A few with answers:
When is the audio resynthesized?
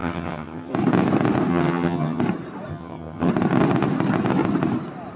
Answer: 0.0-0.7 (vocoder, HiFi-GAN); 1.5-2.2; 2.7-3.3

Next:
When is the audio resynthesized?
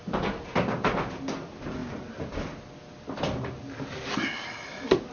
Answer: none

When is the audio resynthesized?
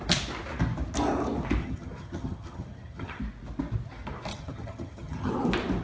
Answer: 1.6-3.2 (vocoder, HiFi-GAN); 4.3-5.3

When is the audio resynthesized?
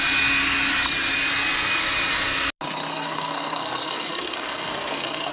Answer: 2.9-5.3 (codec, SNAC)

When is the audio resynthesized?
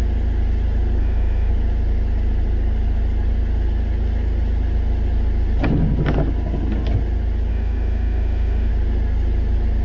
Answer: 1.0-1.5 (autoencoder, DAC-VAE); 7.5-8.7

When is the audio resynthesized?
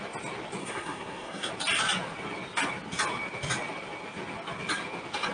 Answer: 0.6-1.5 (codec, SNAC)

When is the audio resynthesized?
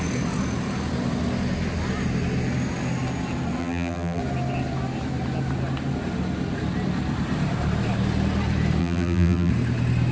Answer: 3.6-4.2 (vocoder, BigVGAN v2); 8.8-9.5